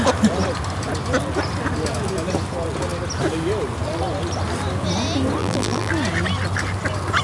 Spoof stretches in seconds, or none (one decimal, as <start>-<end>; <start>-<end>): 5.4-5.9